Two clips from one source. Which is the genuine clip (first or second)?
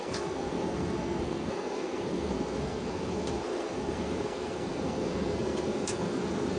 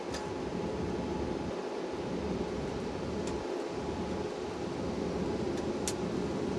second